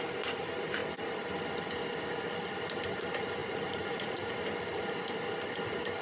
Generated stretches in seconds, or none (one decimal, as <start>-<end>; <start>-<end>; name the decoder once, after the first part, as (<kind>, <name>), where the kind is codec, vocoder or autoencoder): 3.4-4.3 (vocoder, Vocos)

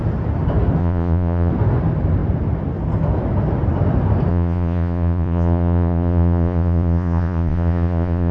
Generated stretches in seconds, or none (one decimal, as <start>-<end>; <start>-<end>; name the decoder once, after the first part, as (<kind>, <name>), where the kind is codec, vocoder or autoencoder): 0.8-1.5 (vocoder, Vocos); 4.3-8.3

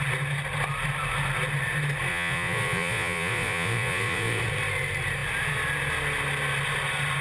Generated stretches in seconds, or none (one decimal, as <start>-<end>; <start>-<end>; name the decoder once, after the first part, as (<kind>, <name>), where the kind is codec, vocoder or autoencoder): 2.1-4.4 (vocoder, Vocos)

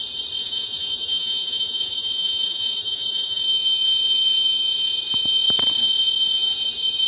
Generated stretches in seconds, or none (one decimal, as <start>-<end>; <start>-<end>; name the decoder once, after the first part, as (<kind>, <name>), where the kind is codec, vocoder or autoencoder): 0.4-3.4 (vocoder, Vocos)

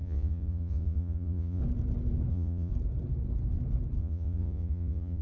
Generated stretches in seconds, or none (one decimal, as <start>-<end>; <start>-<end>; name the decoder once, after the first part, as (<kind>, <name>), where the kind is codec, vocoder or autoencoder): 0.0-1.6 (vocoder, Vocos); 2.3-2.7; 4.0-5.2